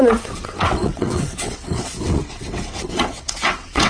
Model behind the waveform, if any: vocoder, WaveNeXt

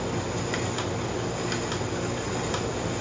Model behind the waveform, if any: none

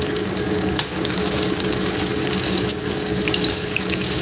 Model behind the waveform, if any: codec, DAC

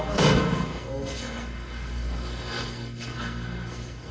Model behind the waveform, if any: codec, SNAC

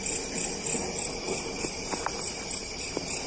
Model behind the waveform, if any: none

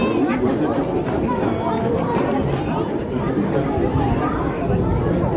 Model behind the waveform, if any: none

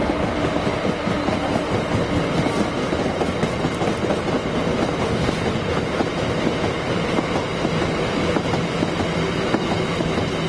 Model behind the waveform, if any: none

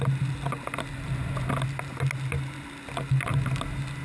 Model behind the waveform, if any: none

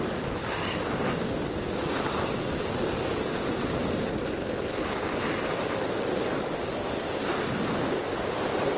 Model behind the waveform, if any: none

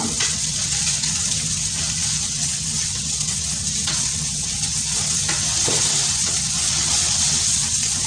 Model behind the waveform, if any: vocoder, WaveNeXt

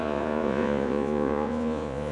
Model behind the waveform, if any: vocoder, Vocos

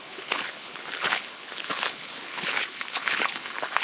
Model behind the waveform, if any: codec, HILCodec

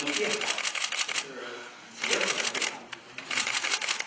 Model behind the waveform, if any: none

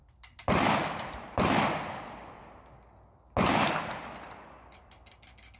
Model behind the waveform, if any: none